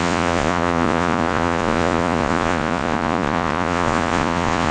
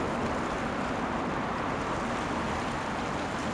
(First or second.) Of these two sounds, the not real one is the first